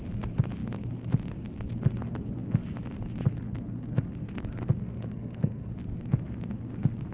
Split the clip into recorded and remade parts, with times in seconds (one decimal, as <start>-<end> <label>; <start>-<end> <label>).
0.0-4.8 recorded; 4.8-5.7 remade; 5.7-7.1 recorded